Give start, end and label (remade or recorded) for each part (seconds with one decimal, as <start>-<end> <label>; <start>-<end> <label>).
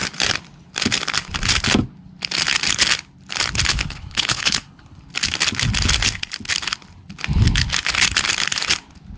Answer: 0.0-3.7 recorded; 3.7-5.0 remade; 5.0-9.2 recorded